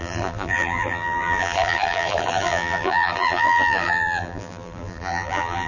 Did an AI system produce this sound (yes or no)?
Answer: yes